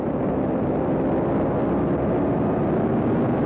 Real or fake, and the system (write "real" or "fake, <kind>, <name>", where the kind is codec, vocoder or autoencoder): real